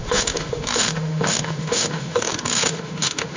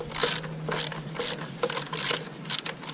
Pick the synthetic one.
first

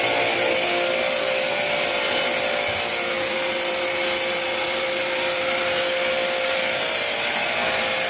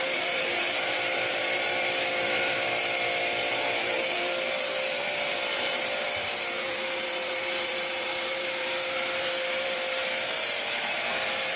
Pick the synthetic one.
second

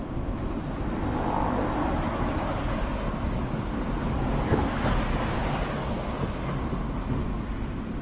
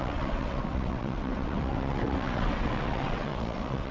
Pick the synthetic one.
second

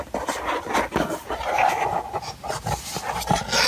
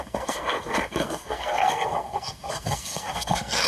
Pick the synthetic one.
second